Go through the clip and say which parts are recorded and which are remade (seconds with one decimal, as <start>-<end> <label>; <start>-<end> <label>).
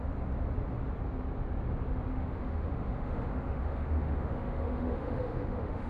0.0-2.1 recorded; 2.1-5.9 remade